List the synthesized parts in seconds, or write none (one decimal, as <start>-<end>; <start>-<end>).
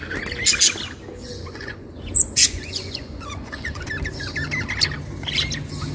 1.2-3.9